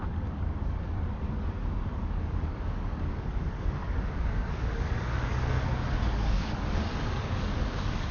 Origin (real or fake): fake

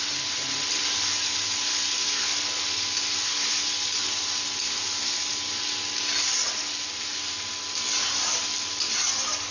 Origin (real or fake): real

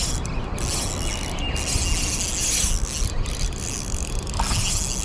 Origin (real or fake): real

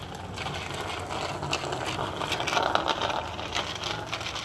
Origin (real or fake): real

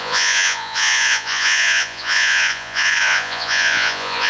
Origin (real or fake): fake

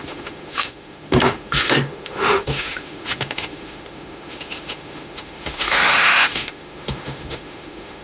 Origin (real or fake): fake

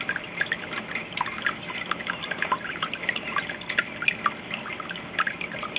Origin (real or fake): real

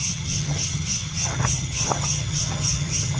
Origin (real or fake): fake